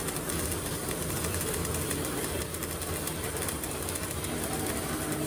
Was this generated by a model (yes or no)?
no